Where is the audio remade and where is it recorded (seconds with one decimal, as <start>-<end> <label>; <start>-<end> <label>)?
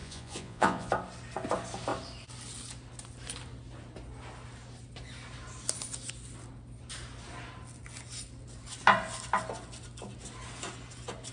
0.0-0.9 remade; 0.9-11.3 recorded